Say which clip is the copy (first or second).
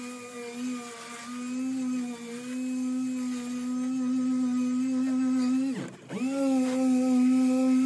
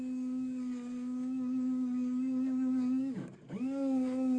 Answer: second